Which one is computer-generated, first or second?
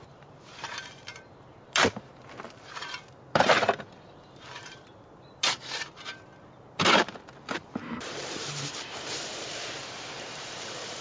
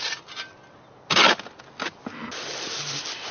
first